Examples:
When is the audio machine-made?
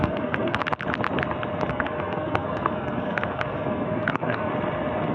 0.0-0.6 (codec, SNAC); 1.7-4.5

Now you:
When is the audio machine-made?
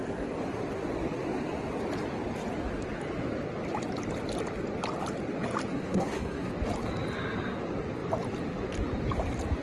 5.7-6.5 (codec, SNAC)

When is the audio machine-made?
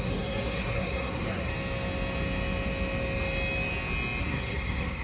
0.0-1.5 (codec, SNAC); 4.2-5.0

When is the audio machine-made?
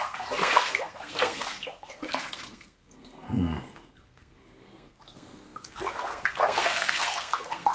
0.0-7.7 (codec, SNAC)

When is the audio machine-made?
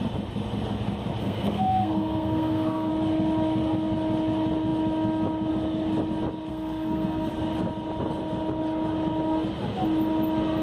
1.2-2.9 (codec, SNAC); 6.5-7.3